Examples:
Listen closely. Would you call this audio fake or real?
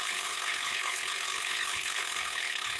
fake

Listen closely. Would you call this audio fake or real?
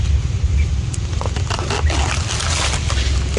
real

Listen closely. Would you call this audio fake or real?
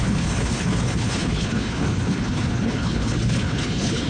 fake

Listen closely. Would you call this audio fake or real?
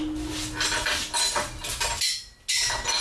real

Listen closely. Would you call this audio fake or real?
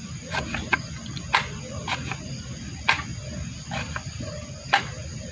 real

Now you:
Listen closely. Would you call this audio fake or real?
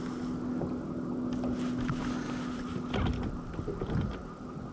real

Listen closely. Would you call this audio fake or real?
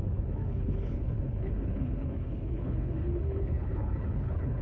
fake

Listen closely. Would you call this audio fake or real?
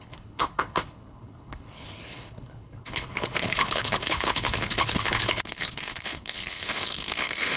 fake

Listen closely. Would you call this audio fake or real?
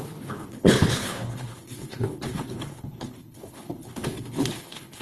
fake